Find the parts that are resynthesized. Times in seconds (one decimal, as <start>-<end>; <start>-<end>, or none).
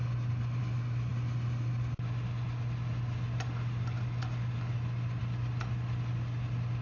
none